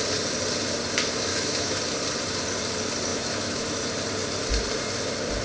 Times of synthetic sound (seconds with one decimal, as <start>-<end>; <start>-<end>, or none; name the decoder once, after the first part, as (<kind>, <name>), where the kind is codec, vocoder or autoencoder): 1.3-1.8 (autoencoder, DAC-VAE); 3.1-3.8

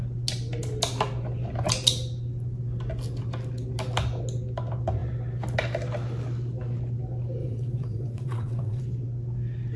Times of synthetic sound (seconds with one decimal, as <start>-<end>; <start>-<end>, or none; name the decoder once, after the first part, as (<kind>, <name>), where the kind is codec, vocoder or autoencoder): 7.4-8.8 (vocoder, WaveNeXt)